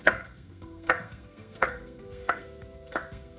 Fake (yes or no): yes